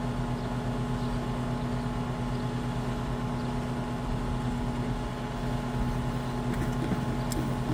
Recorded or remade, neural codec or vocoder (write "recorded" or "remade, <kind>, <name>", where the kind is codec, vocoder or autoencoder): recorded